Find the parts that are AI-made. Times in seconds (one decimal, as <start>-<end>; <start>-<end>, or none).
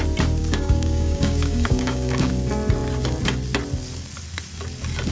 0.4-2.3